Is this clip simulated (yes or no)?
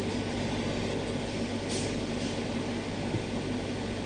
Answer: no